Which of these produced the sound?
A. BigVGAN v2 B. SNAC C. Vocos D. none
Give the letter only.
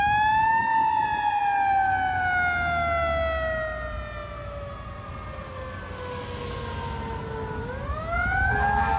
D